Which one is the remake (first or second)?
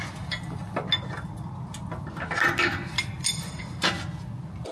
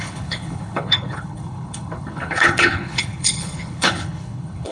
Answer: second